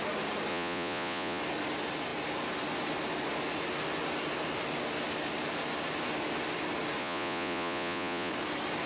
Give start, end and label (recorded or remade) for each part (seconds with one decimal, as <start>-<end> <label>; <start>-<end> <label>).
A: 0.0-0.5 recorded; 0.5-1.4 remade; 1.4-7.0 recorded; 7.0-8.3 remade; 8.3-8.9 recorded